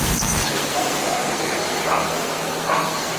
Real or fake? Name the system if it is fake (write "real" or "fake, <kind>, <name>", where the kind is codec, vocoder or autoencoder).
fake, codec, SNAC